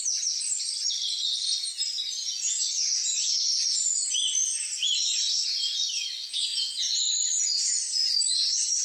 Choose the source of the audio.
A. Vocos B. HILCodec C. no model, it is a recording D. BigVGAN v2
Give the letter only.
C